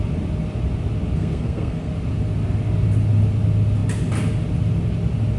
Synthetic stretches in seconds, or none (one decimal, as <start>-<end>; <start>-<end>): 1.2-1.9